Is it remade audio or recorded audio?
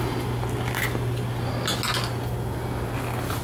recorded